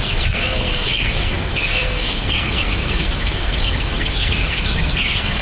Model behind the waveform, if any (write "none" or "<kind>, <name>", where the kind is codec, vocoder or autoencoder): codec, SNAC